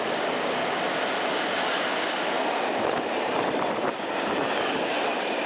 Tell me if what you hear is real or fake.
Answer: real